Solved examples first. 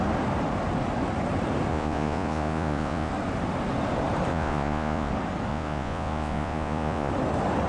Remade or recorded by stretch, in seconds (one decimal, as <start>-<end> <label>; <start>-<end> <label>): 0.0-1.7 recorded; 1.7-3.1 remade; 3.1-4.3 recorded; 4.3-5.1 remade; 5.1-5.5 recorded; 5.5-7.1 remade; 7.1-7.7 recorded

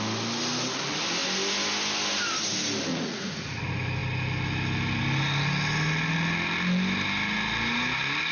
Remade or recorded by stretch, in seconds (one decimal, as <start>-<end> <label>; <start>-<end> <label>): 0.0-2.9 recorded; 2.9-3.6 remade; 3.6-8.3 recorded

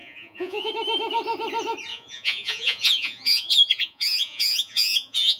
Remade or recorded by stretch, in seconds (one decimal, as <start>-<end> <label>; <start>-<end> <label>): 0.0-0.7 remade; 0.7-1.9 recorded; 1.9-5.4 remade

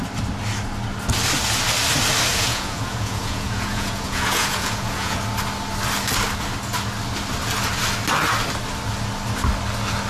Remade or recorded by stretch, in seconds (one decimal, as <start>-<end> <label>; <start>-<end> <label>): 0.0-2.3 recorded; 2.3-5.2 remade; 5.2-10.1 recorded

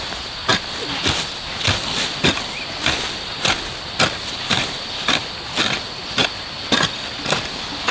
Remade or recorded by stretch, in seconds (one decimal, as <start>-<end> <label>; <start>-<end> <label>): 0.0-7.9 recorded

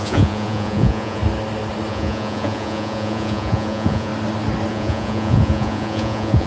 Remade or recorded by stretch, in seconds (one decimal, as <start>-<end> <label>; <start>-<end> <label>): 0.0-1.2 remade; 1.2-1.9 recorded; 1.9-4.1 remade; 4.1-4.7 recorded; 4.7-6.5 remade

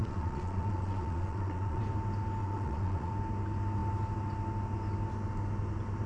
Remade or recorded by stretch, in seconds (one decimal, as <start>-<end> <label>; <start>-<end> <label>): 0.0-1.8 remade; 1.8-2.4 recorded; 2.4-3.1 remade; 3.1-6.1 recorded

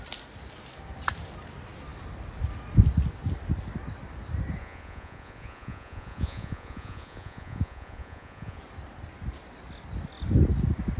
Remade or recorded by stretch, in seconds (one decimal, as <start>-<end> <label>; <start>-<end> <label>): 0.0-4.6 recorded; 4.6-8.6 remade; 8.6-11.0 recorded